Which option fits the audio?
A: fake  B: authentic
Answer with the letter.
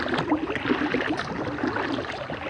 B